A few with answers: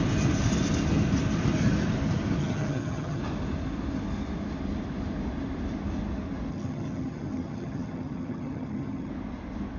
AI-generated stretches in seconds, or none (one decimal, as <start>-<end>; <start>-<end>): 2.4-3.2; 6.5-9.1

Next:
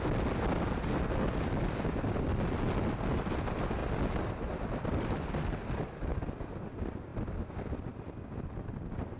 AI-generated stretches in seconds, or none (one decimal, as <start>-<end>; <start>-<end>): none

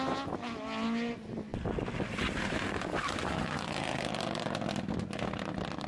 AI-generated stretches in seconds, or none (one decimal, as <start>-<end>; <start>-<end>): none

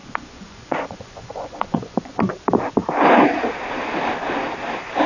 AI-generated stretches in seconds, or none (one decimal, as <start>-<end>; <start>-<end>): 0.0-2.3